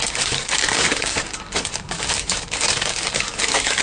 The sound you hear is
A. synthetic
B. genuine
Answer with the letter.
A